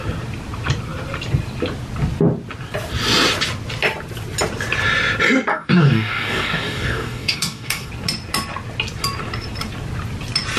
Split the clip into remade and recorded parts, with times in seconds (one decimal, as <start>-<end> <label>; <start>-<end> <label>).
0.0-5.5 recorded; 5.5-7.9 remade; 7.9-10.6 recorded